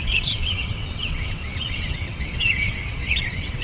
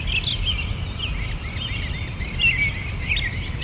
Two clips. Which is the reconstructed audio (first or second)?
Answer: first